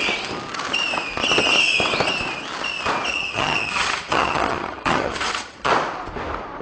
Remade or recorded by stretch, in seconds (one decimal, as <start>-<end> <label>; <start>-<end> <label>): 0.0-3.1 recorded; 3.1-5.7 remade; 5.7-6.6 recorded